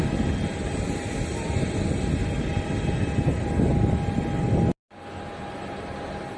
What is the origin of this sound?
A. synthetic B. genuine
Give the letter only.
B